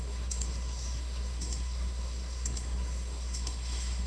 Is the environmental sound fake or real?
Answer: fake